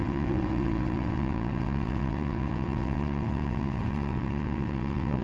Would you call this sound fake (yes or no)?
yes